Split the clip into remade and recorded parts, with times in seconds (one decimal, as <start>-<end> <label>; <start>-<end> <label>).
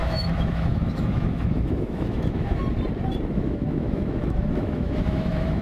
0.0-2.6 remade; 2.6-3.3 recorded; 3.3-5.6 remade